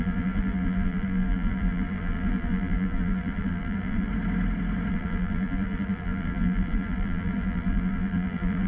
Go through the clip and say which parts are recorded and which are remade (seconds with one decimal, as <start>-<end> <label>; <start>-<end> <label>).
0.0-4.1 remade; 4.1-4.9 recorded; 4.9-8.7 remade